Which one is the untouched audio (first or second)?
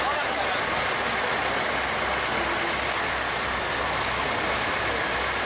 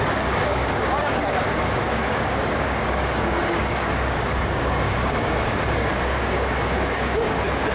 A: first